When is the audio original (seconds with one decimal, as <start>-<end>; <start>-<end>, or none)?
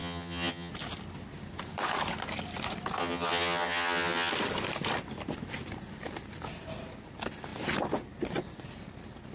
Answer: 0.7-3.0; 4.3-9.3